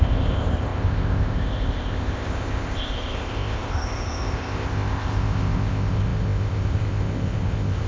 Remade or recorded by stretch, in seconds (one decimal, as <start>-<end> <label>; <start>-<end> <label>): 0.0-7.9 remade

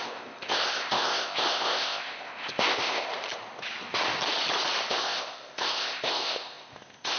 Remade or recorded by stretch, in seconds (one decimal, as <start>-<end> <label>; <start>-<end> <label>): 0.0-3.1 remade; 3.1-4.9 recorded; 4.9-7.2 remade

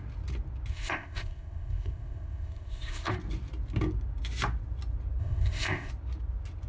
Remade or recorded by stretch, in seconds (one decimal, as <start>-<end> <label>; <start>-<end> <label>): 0.0-0.7 recorded; 0.7-3.1 remade; 3.1-5.2 recorded; 5.2-5.9 remade; 5.9-6.7 recorded

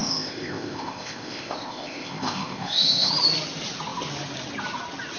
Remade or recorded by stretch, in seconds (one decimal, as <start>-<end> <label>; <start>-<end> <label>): 0.0-3.1 remade; 3.1-5.2 recorded

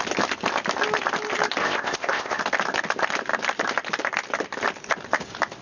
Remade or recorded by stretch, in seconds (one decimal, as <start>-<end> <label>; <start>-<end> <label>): 0.0-1.6 recorded; 1.6-2.4 remade; 2.4-5.6 recorded

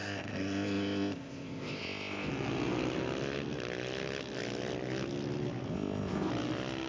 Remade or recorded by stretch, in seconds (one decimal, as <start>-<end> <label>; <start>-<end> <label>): 0.0-2.3 remade; 2.3-5.7 recorded; 5.7-6.3 remade; 6.3-6.9 recorded

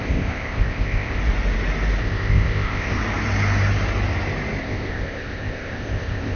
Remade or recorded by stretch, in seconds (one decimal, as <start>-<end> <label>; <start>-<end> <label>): 0.0-1.2 remade; 1.2-2.0 recorded; 2.0-3.0 remade; 3.0-4.6 recorded; 4.6-6.4 remade